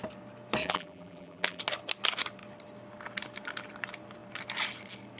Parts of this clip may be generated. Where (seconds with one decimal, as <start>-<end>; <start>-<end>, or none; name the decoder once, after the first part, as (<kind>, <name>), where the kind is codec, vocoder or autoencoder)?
0.6-1.6 (vocoder, BigVGAN v2)